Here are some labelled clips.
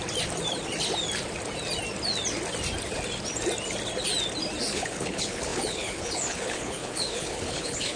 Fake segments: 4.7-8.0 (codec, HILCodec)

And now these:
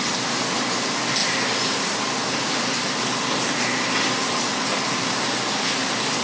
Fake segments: none

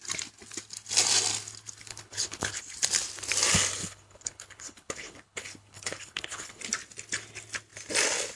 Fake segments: 1.9-2.6 (codec, HILCodec); 3.8-6.6

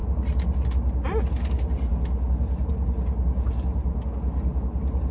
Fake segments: none

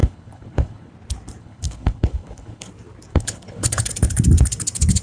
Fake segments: 0.0-0.9 (codec, HILCodec); 1.4-2.7; 3.1-3.9

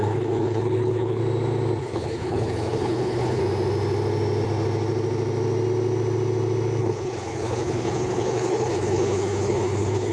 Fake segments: 0.0-1.2 (codec, HILCodec); 1.8-3.4; 6.8-10.1

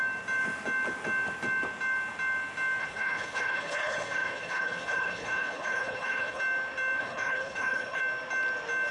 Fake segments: 2.8-6.4 (codec, HILCodec); 7.0-8.0

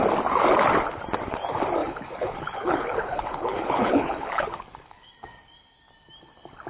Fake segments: 1.8-5.1 (codec, HILCodec)